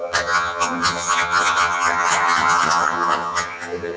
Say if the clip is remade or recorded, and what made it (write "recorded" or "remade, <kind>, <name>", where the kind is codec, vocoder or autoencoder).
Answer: remade, vocoder, HiFi-GAN